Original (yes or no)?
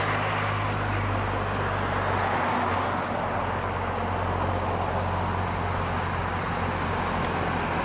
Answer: yes